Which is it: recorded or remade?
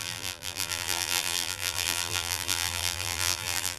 remade